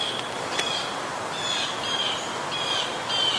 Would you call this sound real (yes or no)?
yes